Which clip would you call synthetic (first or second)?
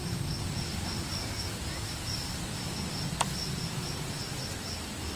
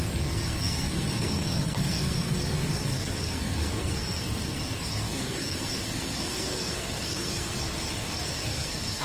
second